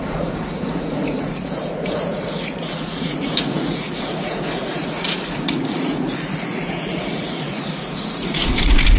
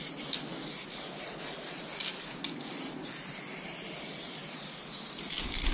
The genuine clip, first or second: second